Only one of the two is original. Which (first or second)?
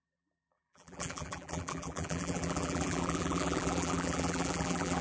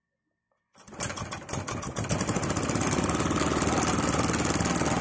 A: second